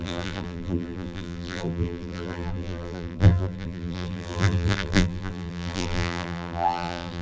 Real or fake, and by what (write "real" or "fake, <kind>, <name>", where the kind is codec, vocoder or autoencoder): fake, vocoder, BigVGAN v2